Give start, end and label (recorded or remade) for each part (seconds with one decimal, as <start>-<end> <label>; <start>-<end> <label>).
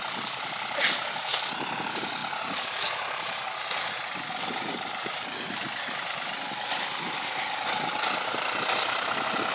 0.0-9.5 recorded